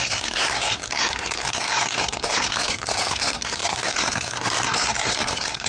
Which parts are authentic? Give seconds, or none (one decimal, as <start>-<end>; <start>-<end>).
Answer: none